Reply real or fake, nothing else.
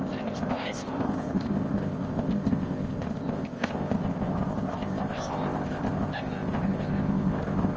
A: fake